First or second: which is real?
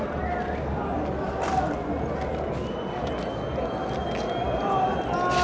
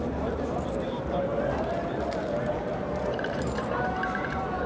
first